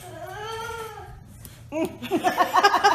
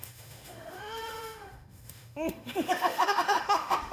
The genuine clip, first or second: first